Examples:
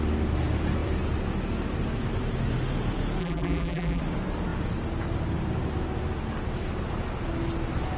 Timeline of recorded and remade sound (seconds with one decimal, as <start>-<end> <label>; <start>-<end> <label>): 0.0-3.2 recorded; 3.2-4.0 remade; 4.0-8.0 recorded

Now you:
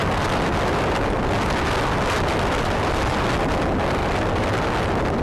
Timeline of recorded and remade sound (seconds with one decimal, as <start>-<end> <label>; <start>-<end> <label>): 0.0-5.2 recorded

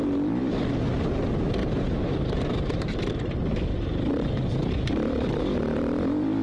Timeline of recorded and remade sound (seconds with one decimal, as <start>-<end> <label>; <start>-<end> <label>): 0.0-1.6 recorded; 1.6-5.4 remade; 5.4-6.4 recorded